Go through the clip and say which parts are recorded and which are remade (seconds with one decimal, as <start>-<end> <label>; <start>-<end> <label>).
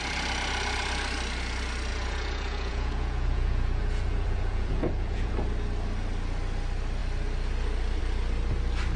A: 0.0-1.9 recorded; 1.9-5.3 remade; 5.3-9.0 recorded